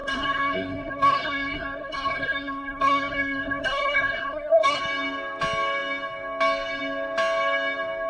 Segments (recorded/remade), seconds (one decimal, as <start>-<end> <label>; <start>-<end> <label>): 0.0-4.8 remade; 4.8-8.1 recorded